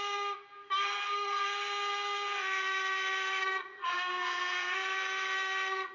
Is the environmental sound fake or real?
fake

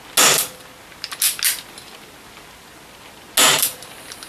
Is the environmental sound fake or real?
real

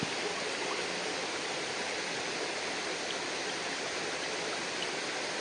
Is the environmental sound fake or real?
real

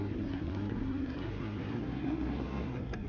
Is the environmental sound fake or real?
fake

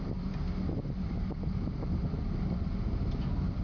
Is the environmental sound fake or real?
real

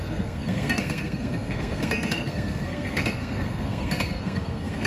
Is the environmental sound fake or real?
fake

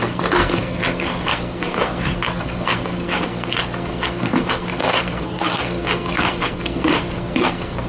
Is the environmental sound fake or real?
fake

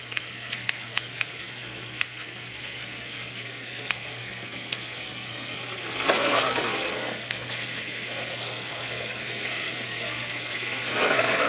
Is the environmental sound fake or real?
fake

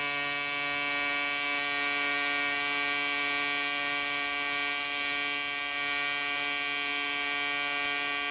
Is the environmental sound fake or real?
real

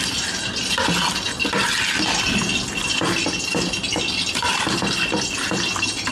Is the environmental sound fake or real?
real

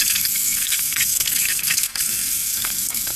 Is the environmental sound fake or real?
fake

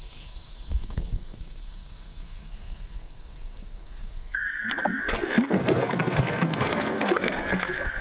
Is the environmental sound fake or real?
fake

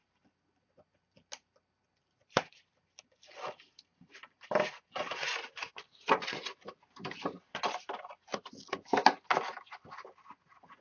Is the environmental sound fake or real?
real